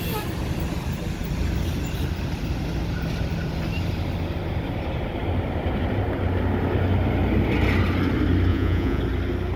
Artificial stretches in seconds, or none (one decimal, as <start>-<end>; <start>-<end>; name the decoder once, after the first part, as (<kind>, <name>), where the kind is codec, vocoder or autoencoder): 8.5-9.0 (vocoder, Vocos)